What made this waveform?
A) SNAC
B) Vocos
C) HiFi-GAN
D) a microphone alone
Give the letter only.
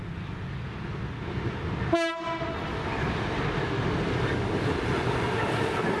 D